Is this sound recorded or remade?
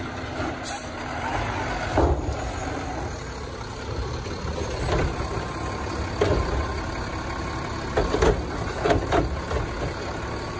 recorded